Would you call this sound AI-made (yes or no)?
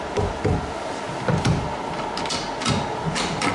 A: no